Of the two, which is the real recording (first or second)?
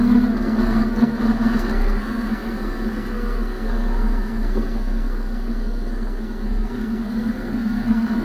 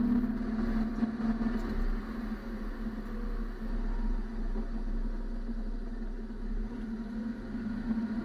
second